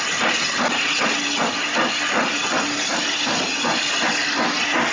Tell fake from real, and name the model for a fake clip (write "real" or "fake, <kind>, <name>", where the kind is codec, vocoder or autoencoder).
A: real